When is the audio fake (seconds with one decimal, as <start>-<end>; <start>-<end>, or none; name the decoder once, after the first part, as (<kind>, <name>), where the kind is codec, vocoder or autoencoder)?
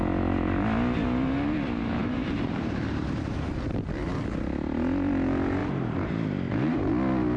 2.0-3.1 (vocoder, BigVGAN v2); 5.6-6.9